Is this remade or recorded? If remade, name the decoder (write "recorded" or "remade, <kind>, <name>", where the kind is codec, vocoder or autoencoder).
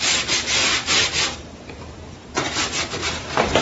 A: remade, vocoder, BigVGAN v2